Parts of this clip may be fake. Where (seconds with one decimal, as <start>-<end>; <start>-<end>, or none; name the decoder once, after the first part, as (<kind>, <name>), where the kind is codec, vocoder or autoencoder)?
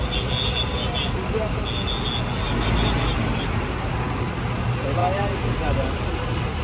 none